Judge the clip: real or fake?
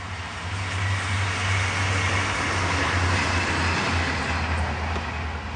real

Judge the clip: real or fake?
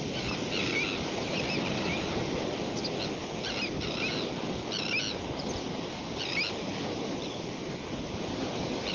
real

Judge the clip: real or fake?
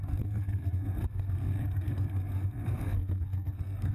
fake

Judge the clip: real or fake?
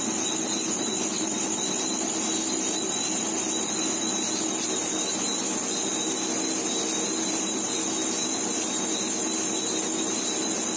real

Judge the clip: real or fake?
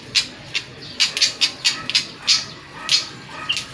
real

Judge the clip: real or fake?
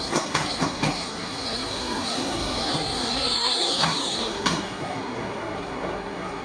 fake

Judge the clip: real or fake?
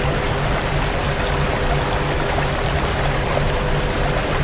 real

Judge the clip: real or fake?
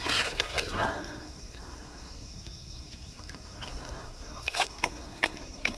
fake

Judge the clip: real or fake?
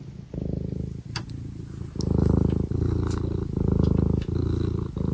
real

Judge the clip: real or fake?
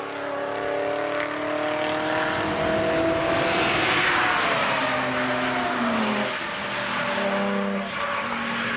real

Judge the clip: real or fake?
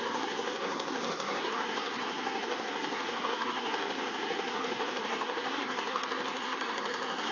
fake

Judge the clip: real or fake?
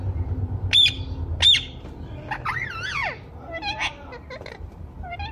real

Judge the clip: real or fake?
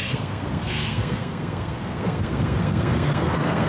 fake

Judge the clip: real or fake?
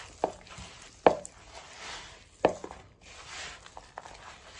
real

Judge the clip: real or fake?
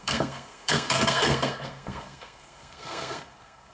fake